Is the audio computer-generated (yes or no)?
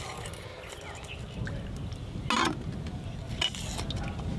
no